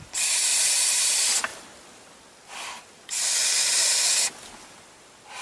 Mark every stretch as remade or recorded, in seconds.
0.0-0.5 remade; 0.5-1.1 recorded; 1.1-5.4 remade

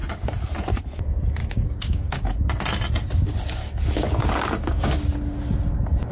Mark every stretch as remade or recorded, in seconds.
0.0-1.4 recorded; 1.4-2.1 remade; 2.1-3.6 recorded; 3.6-5.0 remade; 5.0-6.1 recorded